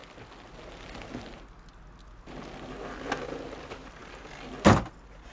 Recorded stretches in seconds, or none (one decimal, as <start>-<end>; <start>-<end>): 0.0-5.3